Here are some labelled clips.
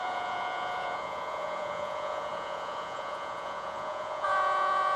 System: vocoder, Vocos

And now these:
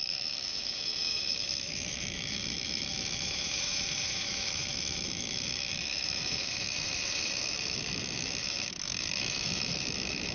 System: autoencoder, DAC-VAE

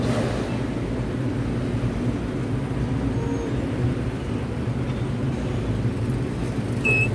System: none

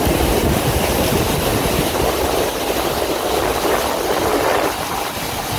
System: none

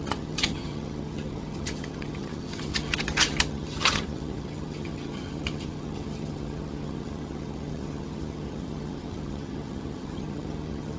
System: vocoder, HiFi-GAN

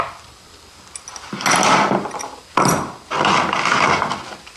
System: none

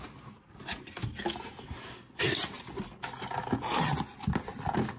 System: none